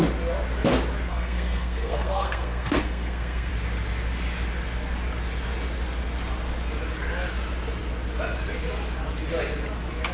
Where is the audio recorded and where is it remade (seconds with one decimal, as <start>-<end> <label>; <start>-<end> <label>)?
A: 0.0-1.1 recorded; 1.1-3.5 remade; 3.5-10.1 recorded